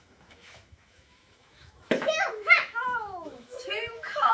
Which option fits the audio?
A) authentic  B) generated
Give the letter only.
B